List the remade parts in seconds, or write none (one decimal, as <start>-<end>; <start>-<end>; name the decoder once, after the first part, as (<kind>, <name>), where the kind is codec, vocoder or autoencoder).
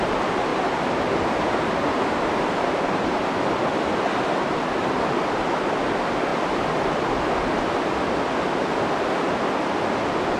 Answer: 0.5-3.6 (vocoder, BigVGAN v2)